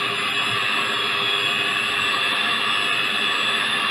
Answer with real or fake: real